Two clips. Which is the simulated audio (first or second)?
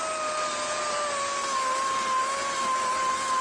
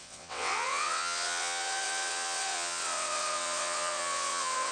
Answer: second